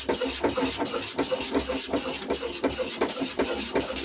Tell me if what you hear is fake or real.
fake